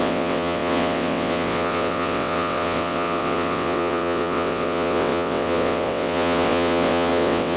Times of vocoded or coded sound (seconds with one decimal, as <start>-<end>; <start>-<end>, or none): 0.0-7.6